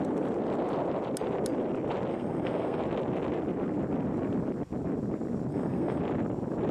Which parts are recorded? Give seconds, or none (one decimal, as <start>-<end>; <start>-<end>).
0.0-2.1; 2.8-5.5; 6.0-6.7